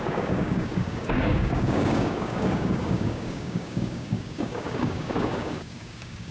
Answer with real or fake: fake